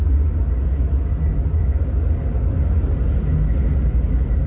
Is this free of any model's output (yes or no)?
yes